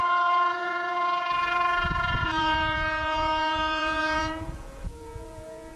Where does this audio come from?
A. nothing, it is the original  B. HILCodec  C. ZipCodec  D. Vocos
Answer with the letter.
D